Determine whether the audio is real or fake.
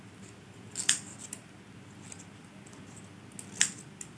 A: real